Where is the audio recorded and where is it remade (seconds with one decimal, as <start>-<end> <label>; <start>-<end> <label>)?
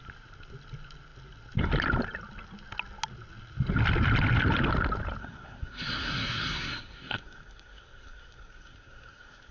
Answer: 0.0-5.2 recorded; 5.2-9.5 remade